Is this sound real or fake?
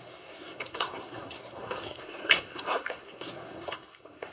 fake